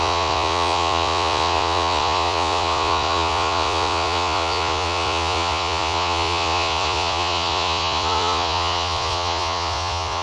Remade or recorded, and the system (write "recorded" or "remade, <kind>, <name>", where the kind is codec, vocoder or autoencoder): remade, vocoder, Vocos